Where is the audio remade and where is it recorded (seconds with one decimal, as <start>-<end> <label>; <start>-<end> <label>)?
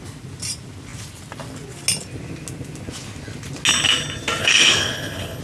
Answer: 0.0-4.4 recorded; 4.4-5.4 remade